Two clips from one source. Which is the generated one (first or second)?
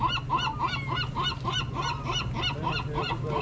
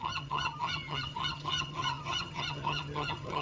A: second